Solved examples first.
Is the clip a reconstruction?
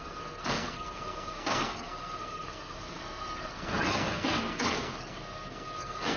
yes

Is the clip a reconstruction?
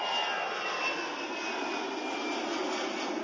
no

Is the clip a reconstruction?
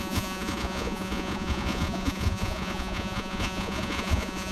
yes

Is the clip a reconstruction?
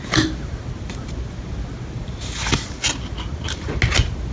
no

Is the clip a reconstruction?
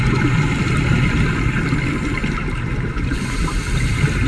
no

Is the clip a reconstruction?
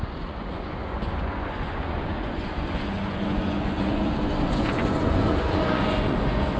yes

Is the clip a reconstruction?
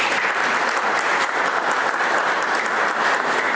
no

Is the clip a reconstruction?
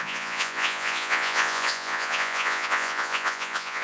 yes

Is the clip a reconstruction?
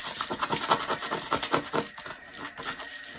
no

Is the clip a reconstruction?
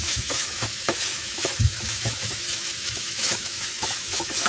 yes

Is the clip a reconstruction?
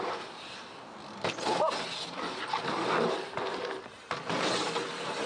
no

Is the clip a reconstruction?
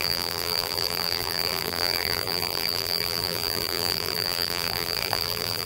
yes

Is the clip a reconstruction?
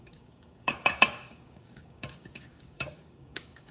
yes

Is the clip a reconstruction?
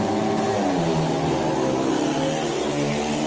no